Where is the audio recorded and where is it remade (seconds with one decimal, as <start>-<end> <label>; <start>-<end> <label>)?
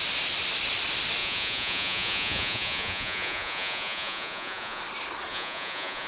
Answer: 0.0-1.2 recorded; 1.2-4.8 remade; 4.8-5.3 recorded; 5.3-6.1 remade